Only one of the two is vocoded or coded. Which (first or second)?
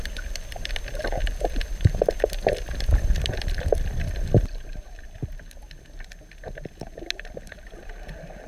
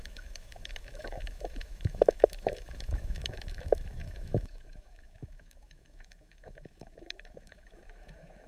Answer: second